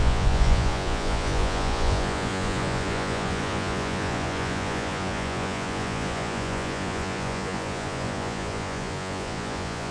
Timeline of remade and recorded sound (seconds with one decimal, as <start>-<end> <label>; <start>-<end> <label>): 0.0-9.9 remade